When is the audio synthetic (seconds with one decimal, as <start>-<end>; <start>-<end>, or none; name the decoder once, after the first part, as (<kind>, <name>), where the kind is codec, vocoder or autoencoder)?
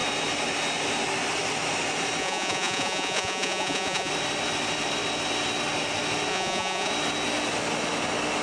2.2-4.1 (vocoder, Vocos); 6.3-6.9